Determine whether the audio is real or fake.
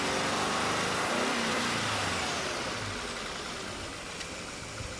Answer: real